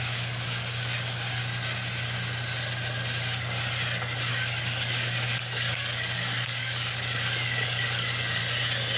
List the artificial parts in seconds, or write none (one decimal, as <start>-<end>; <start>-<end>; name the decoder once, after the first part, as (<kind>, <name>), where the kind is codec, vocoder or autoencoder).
0.0-1.4 (codec, DAC); 4.3-8.4